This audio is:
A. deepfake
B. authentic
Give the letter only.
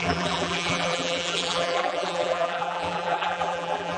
A